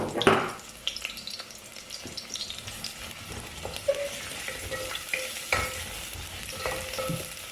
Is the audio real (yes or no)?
yes